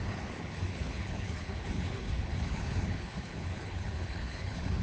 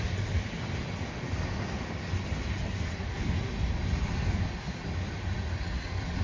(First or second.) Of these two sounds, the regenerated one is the first